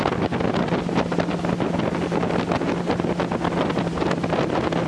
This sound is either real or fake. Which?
real